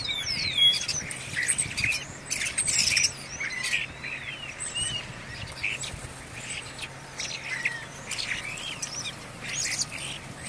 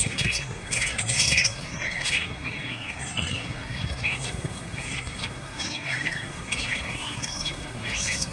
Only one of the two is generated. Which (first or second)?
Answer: second